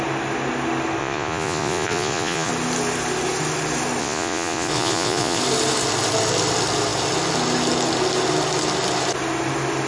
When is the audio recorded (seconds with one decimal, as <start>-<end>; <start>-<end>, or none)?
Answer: 0.0-1.0; 2.5-4.0; 5.4-9.9

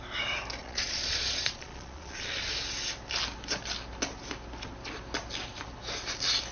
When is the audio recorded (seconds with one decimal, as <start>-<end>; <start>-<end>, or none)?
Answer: 0.0-0.6; 2.5-6.5

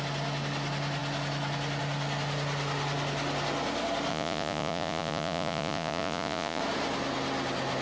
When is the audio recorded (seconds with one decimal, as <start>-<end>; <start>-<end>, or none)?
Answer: 0.0-4.1; 6.6-7.8

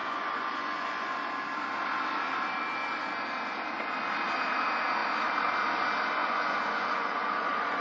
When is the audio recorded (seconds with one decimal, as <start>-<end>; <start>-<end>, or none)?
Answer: 1.3-6.2

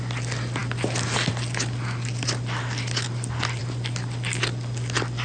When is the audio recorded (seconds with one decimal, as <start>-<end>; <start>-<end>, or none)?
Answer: 0.0-5.2

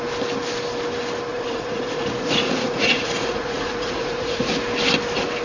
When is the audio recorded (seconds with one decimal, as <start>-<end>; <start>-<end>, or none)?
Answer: 0.0-1.3; 4.5-5.4